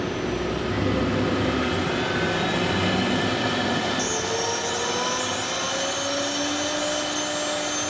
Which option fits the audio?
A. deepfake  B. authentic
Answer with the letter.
B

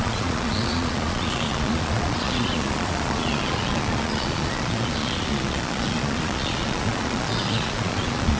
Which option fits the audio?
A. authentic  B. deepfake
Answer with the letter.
B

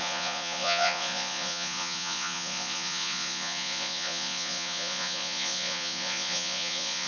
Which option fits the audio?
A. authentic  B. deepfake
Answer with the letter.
B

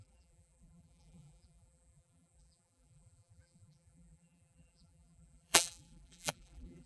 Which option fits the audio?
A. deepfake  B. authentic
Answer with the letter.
A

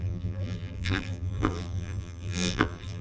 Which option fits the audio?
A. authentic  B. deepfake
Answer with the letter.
B